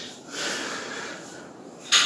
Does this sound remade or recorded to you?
recorded